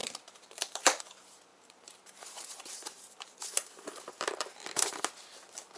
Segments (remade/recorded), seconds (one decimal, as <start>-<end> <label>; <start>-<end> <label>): 0.0-1.0 remade; 1.0-1.5 recorded; 1.5-5.0 remade; 5.0-5.8 recorded